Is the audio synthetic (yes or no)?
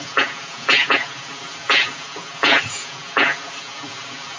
yes